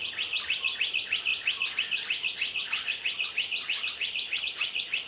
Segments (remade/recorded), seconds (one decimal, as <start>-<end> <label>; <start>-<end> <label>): 0.0-5.1 recorded